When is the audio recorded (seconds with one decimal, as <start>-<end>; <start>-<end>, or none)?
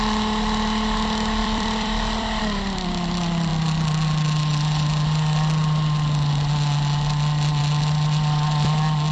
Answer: 0.0-1.4; 2.4-9.1